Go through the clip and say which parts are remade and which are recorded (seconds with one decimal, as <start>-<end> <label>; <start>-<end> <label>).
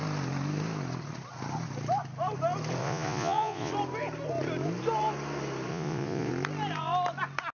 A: 0.0-2.8 recorded; 2.8-3.7 remade; 3.7-5.7 recorded; 5.7-6.3 remade; 6.3-7.6 recorded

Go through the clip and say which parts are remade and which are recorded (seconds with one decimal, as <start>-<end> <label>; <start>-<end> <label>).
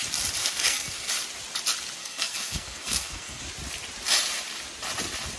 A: 0.0-0.4 recorded; 0.4-1.1 remade; 1.1-2.0 recorded; 2.0-3.4 remade; 3.4-5.4 recorded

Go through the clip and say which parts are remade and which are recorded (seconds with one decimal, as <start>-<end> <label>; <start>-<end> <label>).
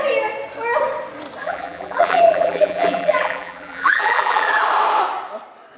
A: 0.0-1.4 recorded; 1.4-4.6 remade; 4.6-5.8 recorded